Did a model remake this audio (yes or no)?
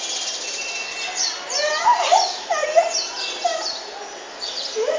no